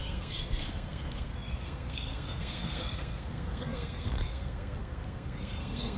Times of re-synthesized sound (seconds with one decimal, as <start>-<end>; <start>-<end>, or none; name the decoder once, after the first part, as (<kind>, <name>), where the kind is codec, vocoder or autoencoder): 0.0-6.0 (codec, SNAC)